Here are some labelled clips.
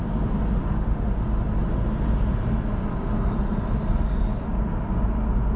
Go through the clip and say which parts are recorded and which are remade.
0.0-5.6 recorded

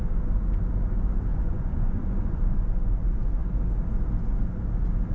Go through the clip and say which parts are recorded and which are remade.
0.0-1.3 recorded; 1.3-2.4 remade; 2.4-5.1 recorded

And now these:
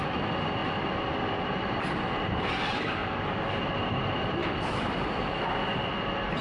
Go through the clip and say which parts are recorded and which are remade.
0.0-6.4 remade

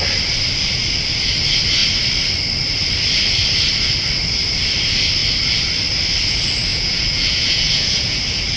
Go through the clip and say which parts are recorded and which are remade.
0.0-6.7 recorded; 6.7-8.2 remade; 8.2-8.6 recorded

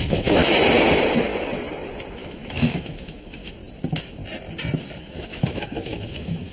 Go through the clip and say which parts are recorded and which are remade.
0.0-0.4 remade; 0.4-2.1 recorded; 2.1-3.6 remade; 3.6-5.0 recorded; 5.0-6.5 remade

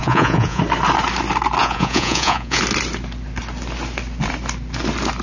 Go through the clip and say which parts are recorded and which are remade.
0.0-0.6 remade; 0.6-1.6 recorded; 1.6-2.6 remade; 2.6-5.2 recorded